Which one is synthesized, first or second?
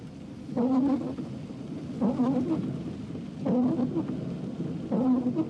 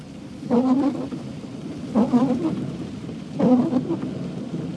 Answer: second